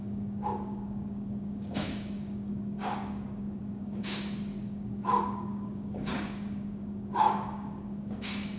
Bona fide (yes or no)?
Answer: no